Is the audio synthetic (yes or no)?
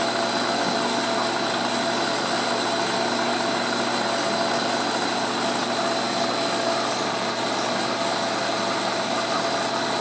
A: no